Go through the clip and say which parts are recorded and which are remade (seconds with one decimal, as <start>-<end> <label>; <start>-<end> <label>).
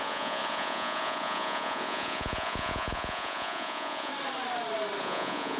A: 0.0-4.1 remade; 4.1-5.0 recorded; 5.0-5.6 remade